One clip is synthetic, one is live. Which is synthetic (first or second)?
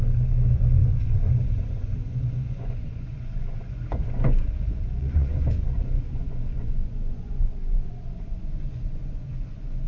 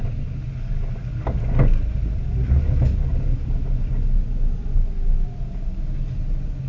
first